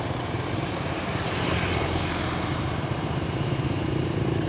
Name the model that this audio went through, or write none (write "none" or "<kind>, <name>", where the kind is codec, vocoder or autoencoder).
vocoder, BigVGAN v2